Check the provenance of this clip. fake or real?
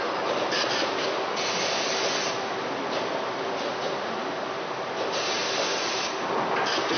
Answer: real